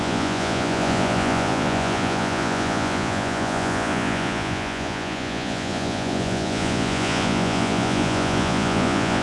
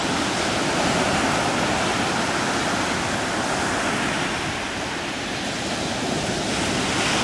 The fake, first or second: first